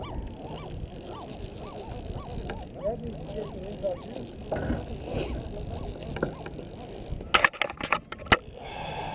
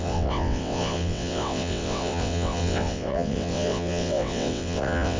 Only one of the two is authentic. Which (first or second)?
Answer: first